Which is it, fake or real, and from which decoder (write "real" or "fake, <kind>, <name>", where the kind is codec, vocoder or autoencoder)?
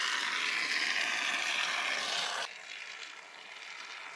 real